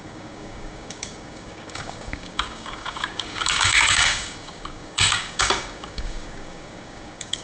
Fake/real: fake